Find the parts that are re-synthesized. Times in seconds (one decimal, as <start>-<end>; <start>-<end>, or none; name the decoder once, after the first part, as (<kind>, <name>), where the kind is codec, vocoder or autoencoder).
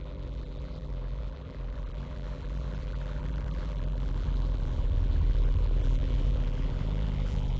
0.0-7.6 (vocoder, BigVGAN v2)